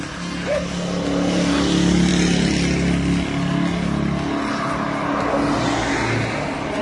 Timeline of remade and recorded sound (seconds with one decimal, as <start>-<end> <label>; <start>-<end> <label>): 0.0-6.8 recorded